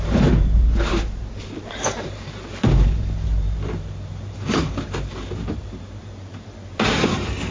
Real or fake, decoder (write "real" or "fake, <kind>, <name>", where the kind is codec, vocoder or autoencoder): fake, vocoder, BigVGAN v2